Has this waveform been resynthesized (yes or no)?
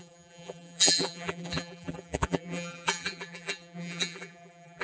yes